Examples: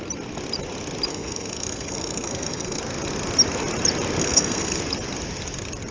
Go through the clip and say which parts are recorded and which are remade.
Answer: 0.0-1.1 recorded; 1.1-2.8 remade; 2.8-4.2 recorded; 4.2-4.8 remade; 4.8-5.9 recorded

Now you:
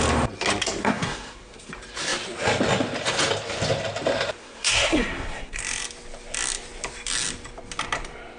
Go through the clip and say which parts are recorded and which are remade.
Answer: 0.0-0.8 recorded; 0.8-1.7 remade; 1.7-4.4 recorded; 4.4-5.6 remade; 5.6-8.4 recorded

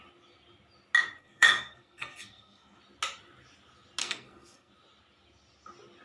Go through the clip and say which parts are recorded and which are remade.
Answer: 0.0-1.2 recorded; 1.2-2.8 remade; 2.8-4.0 recorded; 4.0-4.7 remade; 4.7-6.0 recorded

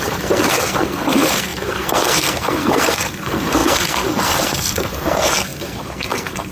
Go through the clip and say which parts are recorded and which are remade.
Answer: 0.0-6.5 remade

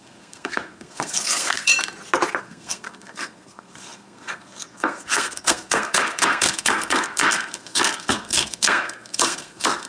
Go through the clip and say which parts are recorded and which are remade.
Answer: 0.0-1.7 remade; 1.7-2.4 recorded; 2.4-9.9 remade